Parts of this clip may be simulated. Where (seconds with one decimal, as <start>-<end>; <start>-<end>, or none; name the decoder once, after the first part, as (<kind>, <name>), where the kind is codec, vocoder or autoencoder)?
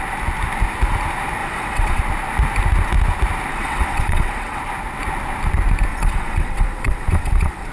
1.4-2.0 (vocoder, WaveNeXt); 3.5-4.6; 5.9-7.7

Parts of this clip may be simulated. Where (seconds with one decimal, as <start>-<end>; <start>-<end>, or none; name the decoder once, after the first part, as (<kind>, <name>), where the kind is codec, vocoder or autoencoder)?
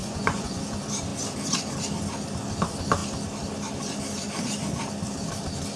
0.0-0.6 (vocoder, Vocos)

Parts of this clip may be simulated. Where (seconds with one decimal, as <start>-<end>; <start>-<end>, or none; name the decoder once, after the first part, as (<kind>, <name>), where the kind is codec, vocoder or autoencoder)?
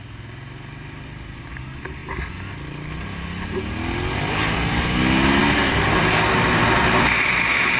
none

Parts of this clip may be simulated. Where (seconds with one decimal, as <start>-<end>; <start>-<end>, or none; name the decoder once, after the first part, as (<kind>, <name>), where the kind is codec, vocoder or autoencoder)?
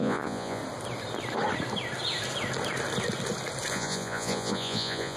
0.0-0.6 (vocoder, Vocos); 3.7-5.2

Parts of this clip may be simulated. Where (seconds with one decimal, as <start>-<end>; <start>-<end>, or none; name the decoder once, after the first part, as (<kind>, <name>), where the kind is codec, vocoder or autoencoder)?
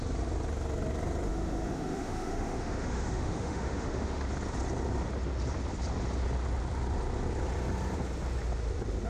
1.3-4.2 (autoencoder, DAC-VAE)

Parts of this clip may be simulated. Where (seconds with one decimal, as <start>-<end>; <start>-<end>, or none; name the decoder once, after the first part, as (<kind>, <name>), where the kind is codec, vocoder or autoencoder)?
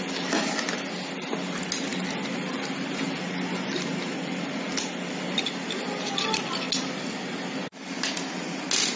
none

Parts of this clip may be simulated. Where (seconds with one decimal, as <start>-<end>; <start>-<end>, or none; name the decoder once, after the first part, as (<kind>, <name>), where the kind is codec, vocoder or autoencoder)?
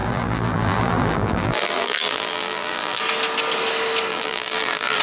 0.0-3.0 (vocoder, BigVGAN v2); 4.1-5.0